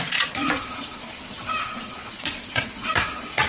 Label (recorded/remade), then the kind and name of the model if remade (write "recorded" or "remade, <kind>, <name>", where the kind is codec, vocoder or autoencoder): remade, vocoder, Vocos